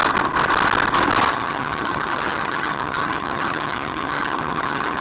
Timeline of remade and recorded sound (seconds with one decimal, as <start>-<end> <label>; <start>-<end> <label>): 0.0-1.3 recorded; 1.3-5.0 remade